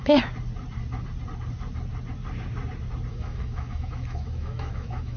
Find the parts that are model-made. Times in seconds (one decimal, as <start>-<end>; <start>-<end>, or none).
3.1-5.2